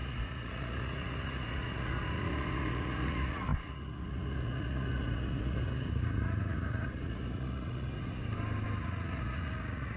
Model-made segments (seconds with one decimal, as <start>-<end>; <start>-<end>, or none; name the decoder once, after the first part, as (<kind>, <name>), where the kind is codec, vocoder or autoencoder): 0.0-8.2 (vocoder, Vocos); 8.8-10.0